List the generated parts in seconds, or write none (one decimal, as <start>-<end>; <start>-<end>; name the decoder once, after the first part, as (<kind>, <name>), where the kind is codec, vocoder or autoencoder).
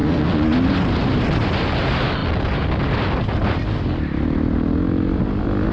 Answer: none